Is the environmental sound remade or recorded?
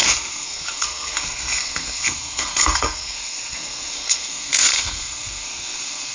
remade